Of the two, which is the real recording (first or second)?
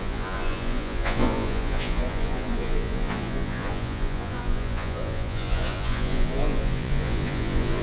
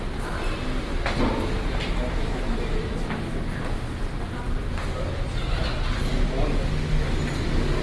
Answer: second